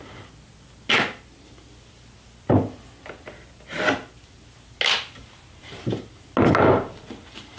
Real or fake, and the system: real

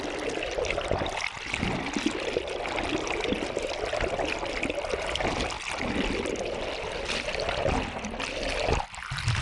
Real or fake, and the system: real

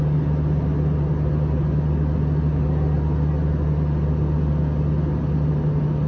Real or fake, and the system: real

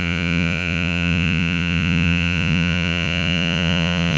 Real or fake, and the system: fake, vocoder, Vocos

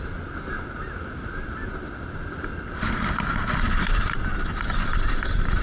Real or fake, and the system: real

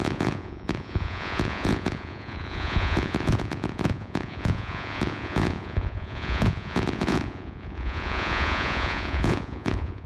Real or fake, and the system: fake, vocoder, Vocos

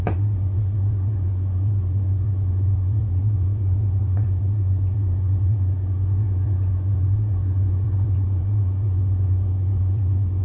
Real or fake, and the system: fake, vocoder, Vocos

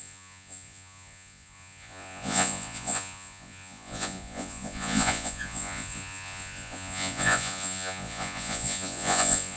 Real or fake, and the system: fake, vocoder, Vocos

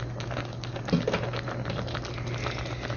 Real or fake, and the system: real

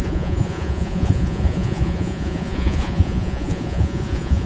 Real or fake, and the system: fake, vocoder, Vocos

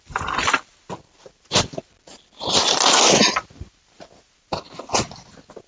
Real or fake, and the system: real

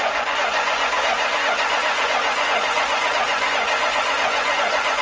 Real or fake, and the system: fake, vocoder, Vocos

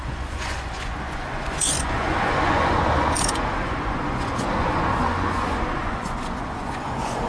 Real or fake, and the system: fake, vocoder, Vocos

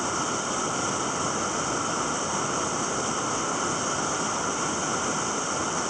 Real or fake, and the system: real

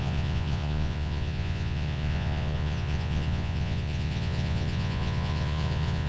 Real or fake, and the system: fake, vocoder, Vocos